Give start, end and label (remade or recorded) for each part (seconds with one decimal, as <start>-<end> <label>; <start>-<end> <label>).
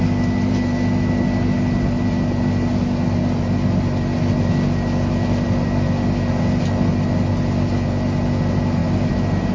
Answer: 0.0-9.5 recorded